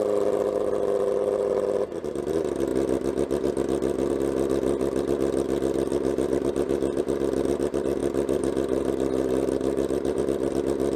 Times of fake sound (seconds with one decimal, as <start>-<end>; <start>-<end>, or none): 5.9-7.0; 8.0-10.2